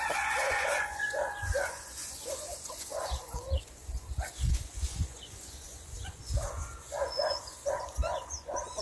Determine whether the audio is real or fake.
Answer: fake